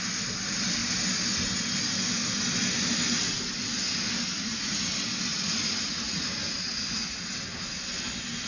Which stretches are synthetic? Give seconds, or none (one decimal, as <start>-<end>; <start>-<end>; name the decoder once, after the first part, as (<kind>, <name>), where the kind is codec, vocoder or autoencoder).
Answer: 4.3-4.8 (vocoder, Vocos); 5.3-7.2